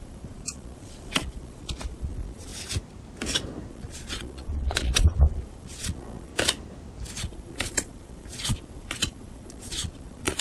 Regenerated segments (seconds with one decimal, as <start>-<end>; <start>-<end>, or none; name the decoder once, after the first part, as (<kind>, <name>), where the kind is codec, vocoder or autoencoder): 0.0-2.5 (vocoder, Vocos); 3.7-6.3; 7.2-10.4